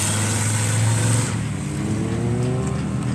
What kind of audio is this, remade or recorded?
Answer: recorded